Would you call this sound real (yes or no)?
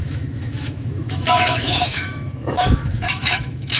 no